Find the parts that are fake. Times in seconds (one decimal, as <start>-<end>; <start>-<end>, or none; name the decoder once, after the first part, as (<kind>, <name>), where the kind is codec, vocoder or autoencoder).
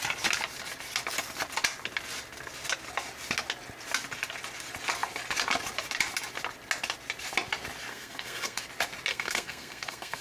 7.9-8.6 (codec, SNAC); 9.1-10.2